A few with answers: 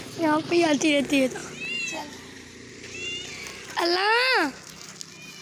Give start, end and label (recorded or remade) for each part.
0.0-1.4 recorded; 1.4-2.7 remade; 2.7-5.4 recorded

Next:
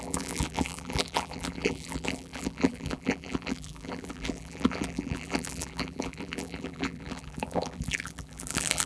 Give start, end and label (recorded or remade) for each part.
0.0-8.9 remade

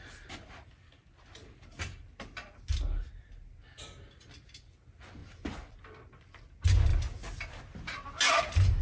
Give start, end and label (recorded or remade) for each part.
0.0-8.8 recorded

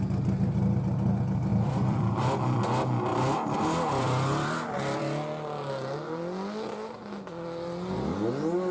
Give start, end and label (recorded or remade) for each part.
0.0-1.5 recorded; 1.5-2.6 remade; 2.6-3.1 recorded; 3.1-5.0 remade; 5.0-8.7 recorded

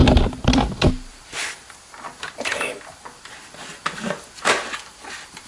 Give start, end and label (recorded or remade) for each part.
0.0-3.3 remade; 3.3-5.5 recorded

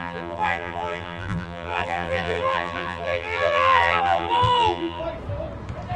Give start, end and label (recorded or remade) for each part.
0.0-5.0 remade; 5.0-6.0 recorded

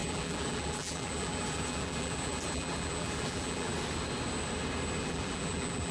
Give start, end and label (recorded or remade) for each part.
0.0-3.7 remade; 3.7-5.0 recorded; 5.0-5.9 remade

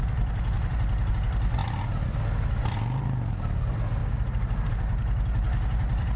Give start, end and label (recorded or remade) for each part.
0.0-1.6 remade; 1.6-3.3 recorded; 3.3-6.2 remade